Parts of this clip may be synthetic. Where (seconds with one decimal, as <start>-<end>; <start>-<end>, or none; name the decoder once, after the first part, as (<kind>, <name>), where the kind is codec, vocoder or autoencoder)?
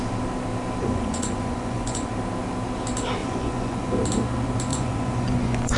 0.8-2.1 (vocoder, Vocos); 3.2-3.9; 4.7-5.8